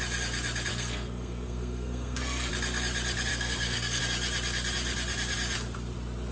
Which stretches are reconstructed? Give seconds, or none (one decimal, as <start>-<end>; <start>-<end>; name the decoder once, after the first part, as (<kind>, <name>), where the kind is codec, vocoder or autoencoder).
0.7-2.5 (codec, SNAC); 3.3-4.0